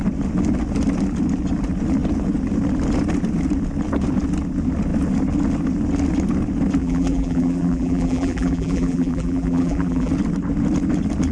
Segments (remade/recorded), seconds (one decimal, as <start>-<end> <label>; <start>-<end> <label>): 0.0-6.8 recorded; 6.8-10.1 remade; 10.1-11.3 recorded